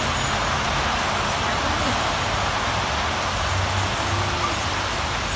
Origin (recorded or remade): recorded